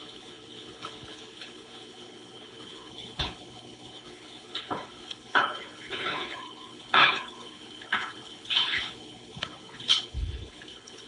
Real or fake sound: fake